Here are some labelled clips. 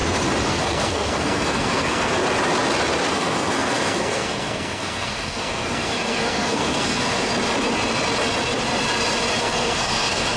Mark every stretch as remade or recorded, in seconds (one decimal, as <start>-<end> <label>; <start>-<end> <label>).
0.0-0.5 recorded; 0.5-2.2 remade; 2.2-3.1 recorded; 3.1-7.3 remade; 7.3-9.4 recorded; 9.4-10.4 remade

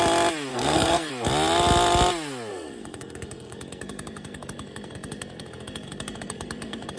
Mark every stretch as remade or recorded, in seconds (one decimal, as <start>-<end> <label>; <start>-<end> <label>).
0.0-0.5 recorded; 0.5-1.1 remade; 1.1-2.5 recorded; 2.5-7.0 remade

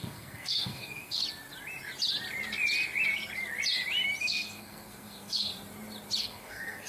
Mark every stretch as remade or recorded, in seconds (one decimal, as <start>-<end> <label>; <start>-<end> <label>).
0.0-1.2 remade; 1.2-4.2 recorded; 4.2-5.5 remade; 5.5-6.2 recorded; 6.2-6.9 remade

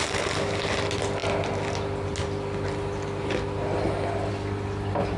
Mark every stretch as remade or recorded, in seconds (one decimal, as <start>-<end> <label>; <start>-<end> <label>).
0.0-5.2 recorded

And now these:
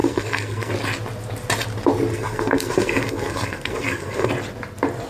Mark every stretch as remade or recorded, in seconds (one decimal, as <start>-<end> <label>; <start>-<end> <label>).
0.0-0.7 remade; 0.7-2.1 recorded; 2.1-4.3 remade; 4.3-5.1 recorded

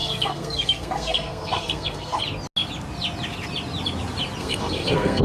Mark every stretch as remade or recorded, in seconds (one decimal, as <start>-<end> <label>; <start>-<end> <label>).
0.0-2.2 remade; 2.2-4.4 recorded; 4.4-5.2 remade